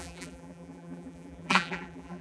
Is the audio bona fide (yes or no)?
no